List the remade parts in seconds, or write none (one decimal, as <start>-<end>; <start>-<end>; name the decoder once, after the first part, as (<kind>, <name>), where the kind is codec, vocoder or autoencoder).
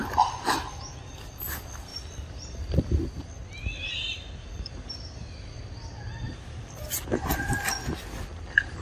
none